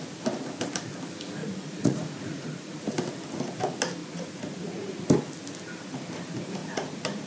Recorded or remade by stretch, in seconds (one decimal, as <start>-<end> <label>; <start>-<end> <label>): 0.0-1.4 recorded; 1.4-2.9 remade; 2.9-4.0 recorded; 4.0-5.0 remade; 5.0-6.6 recorded; 6.6-7.3 remade